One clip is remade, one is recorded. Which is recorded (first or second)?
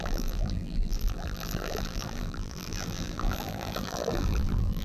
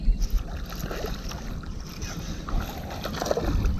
second